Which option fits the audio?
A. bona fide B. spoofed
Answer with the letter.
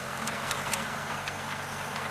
B